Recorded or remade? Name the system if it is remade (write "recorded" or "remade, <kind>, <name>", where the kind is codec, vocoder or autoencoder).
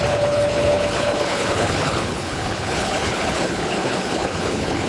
remade, codec, HILCodec